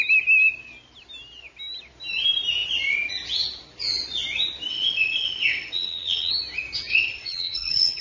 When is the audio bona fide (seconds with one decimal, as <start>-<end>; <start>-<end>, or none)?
0.0-4.7; 6.3-6.9